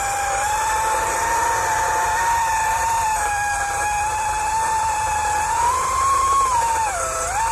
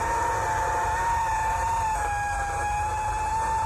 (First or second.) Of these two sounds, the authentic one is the second